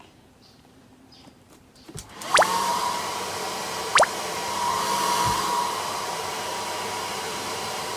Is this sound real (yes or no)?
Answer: no